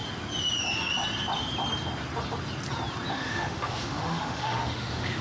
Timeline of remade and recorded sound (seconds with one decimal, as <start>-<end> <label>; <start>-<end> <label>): 0.0-3.1 recorded; 3.1-5.2 remade